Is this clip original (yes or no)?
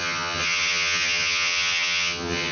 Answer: no